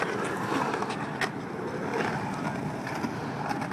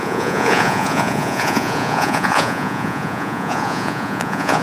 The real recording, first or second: first